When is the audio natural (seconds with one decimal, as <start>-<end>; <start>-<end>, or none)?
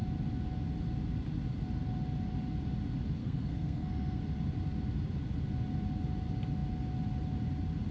0.0-3.2; 4.2-7.9